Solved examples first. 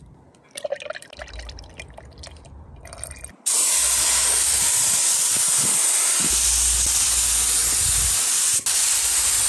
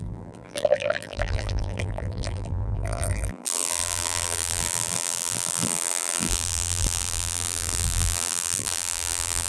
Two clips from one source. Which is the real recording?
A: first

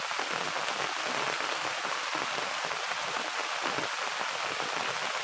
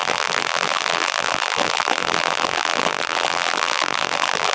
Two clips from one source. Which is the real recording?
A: first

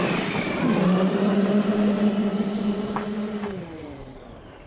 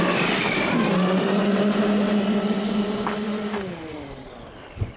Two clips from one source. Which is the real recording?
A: second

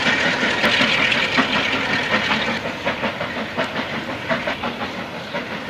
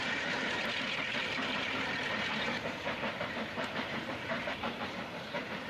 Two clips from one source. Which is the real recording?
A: first